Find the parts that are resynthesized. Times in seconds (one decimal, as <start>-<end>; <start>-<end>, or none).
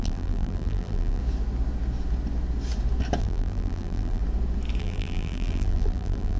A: 0.0-1.2; 3.2-4.2; 4.8-6.4